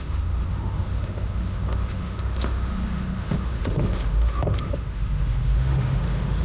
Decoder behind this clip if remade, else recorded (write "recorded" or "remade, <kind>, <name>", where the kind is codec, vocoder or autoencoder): remade, autoencoder, DAC-VAE